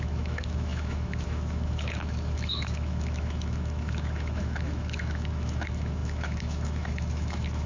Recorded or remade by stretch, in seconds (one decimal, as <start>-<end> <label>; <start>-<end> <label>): 0.0-7.7 remade